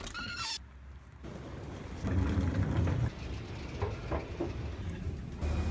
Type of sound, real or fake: real